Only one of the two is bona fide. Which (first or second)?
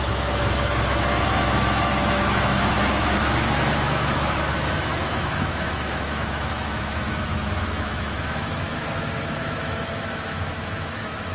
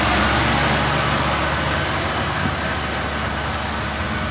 second